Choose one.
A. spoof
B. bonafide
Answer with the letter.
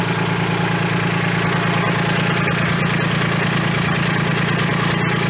B